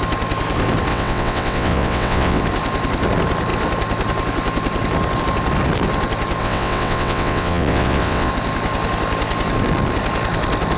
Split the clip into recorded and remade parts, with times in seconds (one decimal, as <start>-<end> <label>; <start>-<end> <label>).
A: 0.0-0.9 recorded; 0.9-2.4 remade; 2.4-6.4 recorded; 6.4-8.3 remade; 8.3-10.8 recorded